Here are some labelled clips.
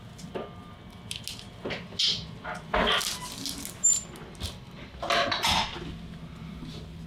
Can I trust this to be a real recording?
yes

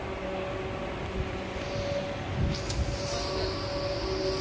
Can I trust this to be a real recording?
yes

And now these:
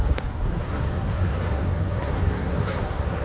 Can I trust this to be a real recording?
no